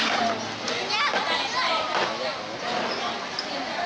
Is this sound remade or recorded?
recorded